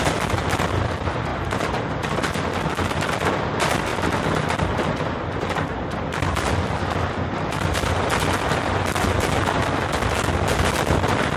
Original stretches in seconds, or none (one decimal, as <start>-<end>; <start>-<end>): 0.0-1.3; 1.9-11.4